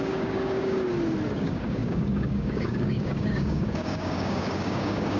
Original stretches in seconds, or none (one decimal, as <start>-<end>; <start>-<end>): 0.9-1.4